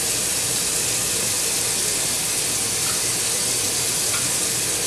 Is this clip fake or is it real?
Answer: real